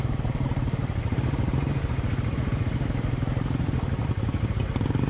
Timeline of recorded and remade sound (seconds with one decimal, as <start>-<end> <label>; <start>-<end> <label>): 0.0-1.5 recorded; 1.5-4.6 remade; 4.6-5.1 recorded